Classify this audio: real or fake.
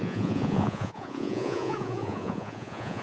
fake